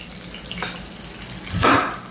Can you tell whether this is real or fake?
real